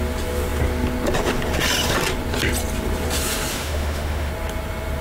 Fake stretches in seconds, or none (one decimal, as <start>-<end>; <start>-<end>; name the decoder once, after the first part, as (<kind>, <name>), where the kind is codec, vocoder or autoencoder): 3.5-4.3 (autoencoder, DAC-VAE)